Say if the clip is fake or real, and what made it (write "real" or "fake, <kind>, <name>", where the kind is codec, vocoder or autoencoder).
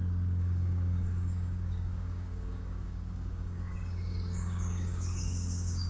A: fake, codec, DAC